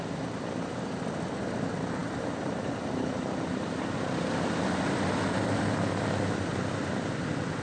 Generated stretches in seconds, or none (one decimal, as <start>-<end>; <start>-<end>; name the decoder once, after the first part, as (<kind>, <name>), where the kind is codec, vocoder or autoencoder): none